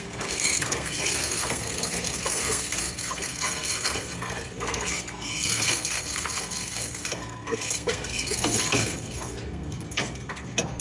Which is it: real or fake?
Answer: fake